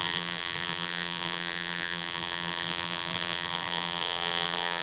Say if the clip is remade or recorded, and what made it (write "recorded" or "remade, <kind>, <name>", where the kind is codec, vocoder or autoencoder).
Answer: remade, vocoder, BigVGAN v2